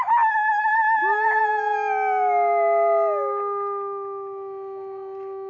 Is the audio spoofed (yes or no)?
no